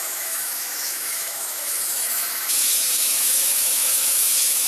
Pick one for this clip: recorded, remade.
remade